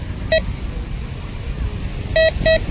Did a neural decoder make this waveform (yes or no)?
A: no